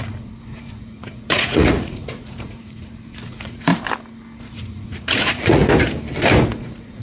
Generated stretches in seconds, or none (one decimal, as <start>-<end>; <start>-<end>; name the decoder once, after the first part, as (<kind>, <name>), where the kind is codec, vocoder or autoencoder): 0.0-3.7 (vocoder, Vocos); 4.4-5.6; 6.6-7.0